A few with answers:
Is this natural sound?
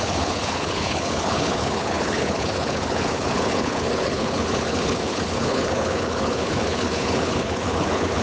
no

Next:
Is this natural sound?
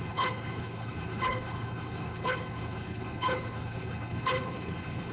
no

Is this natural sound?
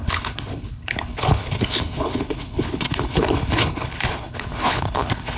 no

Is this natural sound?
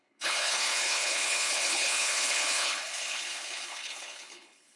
no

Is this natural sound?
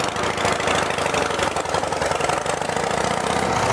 yes